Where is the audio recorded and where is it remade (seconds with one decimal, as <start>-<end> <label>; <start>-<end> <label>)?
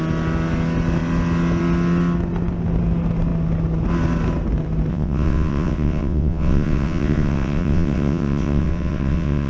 0.0-4.9 recorded; 4.9-9.5 remade